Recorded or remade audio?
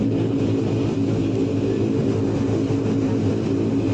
recorded